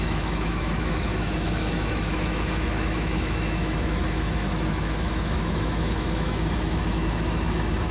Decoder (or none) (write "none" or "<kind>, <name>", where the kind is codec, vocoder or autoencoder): autoencoder, DAC-VAE